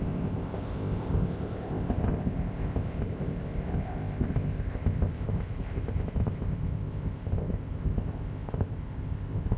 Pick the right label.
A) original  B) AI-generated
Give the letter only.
B